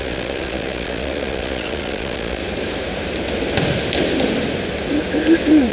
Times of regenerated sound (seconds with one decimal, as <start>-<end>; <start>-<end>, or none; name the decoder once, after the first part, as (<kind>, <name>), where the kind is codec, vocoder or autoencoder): 0.0-2.4 (vocoder, Vocos)